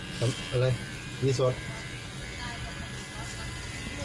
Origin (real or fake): real